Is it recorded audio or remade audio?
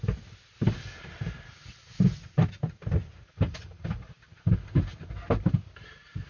recorded